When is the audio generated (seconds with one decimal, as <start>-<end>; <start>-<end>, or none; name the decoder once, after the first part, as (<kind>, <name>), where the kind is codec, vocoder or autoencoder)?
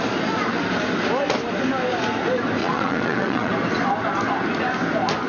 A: 2.6-3.5 (vocoder, WaveNeXt)